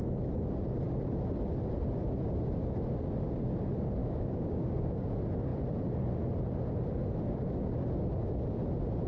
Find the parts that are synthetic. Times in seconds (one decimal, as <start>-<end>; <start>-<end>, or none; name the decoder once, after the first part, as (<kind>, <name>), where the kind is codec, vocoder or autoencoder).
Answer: 4.0-5.1 (codec, DAC)